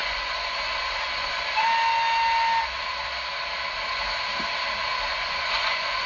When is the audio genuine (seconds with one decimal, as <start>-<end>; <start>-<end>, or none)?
1.4-5.1